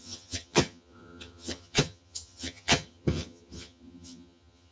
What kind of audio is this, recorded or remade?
remade